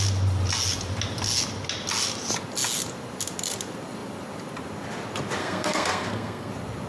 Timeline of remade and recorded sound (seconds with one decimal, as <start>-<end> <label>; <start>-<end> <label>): 0.0-5.4 recorded; 5.4-6.5 remade; 6.5-6.9 recorded